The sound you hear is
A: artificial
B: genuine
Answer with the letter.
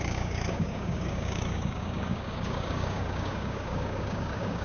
A